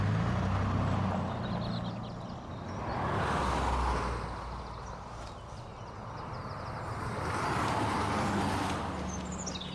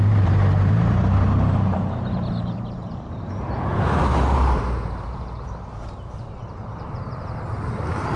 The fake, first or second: second